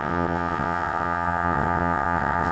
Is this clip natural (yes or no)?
no